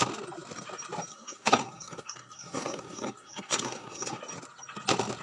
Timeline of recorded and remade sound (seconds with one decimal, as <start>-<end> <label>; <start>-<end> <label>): 0.0-1.1 recorded; 1.1-4.2 remade; 4.2-5.2 recorded